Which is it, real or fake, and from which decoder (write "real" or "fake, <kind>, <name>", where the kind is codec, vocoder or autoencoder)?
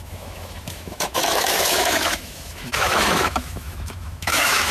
fake, autoencoder, DAC-VAE